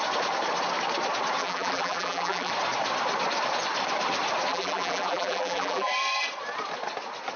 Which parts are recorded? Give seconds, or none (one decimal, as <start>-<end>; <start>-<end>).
0.0-1.4; 2.5-4.5; 5.9-7.4